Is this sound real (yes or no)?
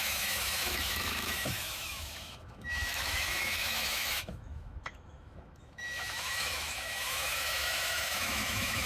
no